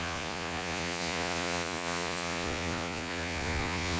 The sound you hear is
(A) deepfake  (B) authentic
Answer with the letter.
A